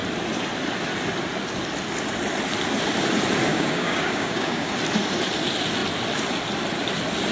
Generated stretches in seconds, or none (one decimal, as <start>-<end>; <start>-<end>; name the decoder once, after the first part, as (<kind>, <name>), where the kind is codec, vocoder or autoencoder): 3.5-4.7 (codec, DAC)